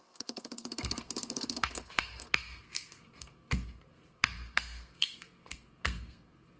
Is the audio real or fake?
fake